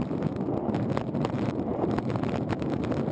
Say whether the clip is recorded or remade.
remade